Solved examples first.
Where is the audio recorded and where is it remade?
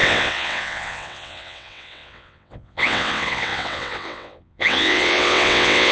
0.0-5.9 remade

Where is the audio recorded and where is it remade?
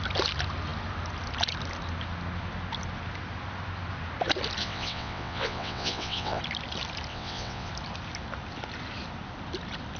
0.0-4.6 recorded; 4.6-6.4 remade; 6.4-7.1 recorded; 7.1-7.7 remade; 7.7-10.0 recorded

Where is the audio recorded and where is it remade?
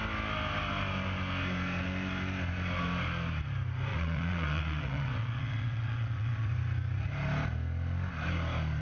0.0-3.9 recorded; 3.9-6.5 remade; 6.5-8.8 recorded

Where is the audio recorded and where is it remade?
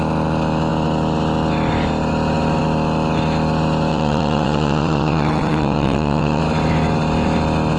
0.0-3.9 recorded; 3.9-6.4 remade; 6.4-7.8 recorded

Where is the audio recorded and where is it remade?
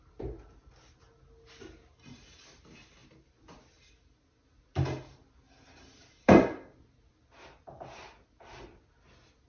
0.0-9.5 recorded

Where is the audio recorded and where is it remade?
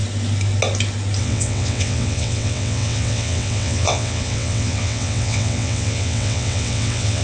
0.0-1.2 recorded; 1.2-7.2 remade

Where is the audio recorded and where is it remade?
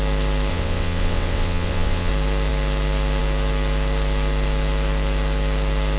0.0-0.5 recorded; 0.5-2.1 remade; 2.1-6.0 recorded